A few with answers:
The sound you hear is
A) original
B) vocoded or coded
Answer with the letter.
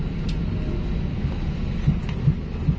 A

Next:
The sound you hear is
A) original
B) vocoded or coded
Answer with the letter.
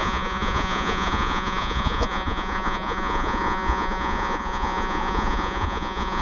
B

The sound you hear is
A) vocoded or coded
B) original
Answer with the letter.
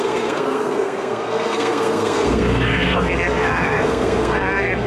A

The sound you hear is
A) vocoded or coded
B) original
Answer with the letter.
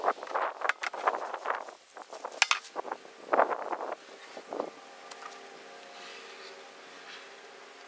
B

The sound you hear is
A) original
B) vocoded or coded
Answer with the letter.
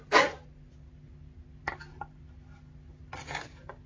A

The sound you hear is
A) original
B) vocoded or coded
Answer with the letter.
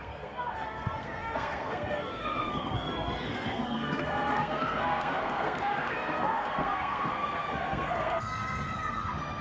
B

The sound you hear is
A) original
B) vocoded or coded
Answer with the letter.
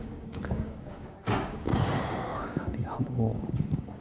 B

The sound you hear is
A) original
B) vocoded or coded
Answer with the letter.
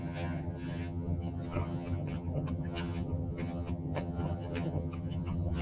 B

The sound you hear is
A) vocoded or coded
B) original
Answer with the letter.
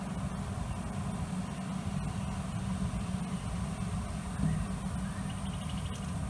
B